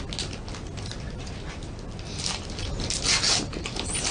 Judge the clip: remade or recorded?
recorded